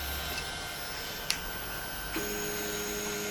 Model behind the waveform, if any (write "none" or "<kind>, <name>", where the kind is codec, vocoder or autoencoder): none